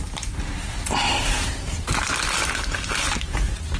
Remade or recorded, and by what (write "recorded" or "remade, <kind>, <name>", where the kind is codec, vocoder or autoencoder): recorded